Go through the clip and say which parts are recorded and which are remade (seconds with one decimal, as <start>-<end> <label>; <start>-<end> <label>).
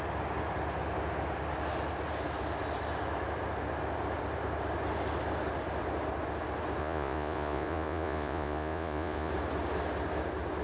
0.0-6.8 recorded; 6.8-9.3 remade; 9.3-10.6 recorded